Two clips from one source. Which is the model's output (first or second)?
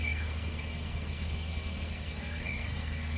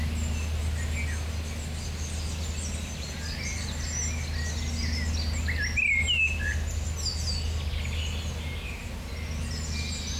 first